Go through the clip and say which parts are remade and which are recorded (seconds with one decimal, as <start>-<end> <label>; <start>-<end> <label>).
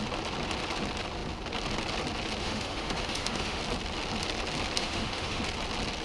0.0-2.4 recorded; 2.4-3.6 remade; 3.6-4.8 recorded; 4.8-5.4 remade; 5.4-6.0 recorded